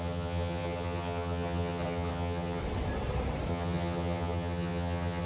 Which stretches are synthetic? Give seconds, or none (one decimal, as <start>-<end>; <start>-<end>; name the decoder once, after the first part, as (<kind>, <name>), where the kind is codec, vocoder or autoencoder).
0.0-2.6 (vocoder, HiFi-GAN); 3.5-5.2